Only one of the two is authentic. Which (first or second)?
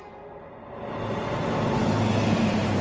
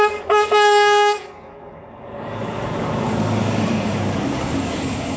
first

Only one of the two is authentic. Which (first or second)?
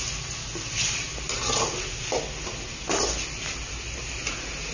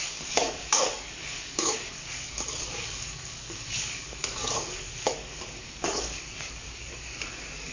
first